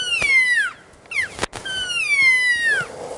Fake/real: real